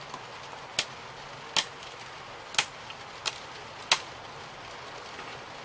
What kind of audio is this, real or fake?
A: real